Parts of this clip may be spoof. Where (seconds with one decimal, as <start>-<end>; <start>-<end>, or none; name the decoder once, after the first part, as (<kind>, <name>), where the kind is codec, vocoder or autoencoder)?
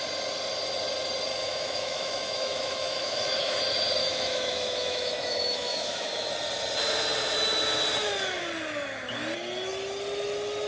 1.3-3.6 (autoencoder, DAC-VAE); 4.0-6.3